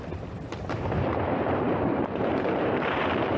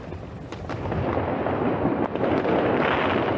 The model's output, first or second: first